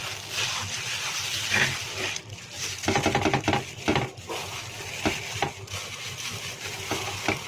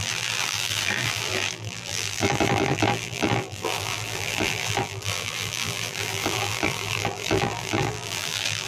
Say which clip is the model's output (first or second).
second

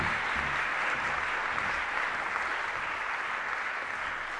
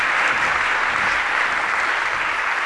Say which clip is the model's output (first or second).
second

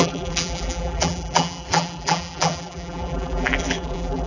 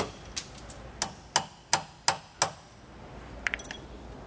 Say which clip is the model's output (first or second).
first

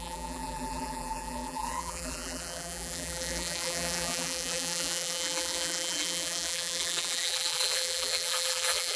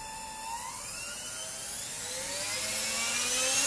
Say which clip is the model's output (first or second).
first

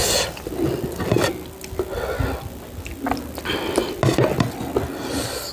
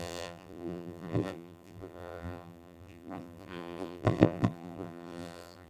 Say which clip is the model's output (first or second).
second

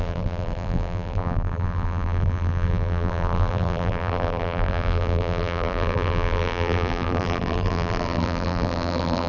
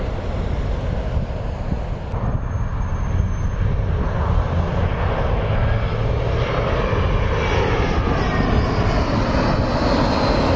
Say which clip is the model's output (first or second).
first